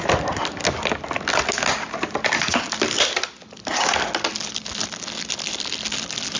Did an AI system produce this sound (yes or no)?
no